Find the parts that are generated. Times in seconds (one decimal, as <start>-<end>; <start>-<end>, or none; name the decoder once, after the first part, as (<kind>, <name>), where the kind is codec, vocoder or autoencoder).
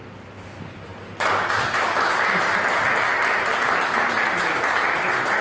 none